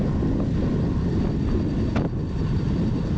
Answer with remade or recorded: recorded